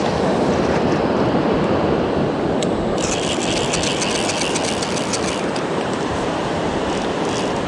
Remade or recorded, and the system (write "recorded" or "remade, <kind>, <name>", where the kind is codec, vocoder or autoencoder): recorded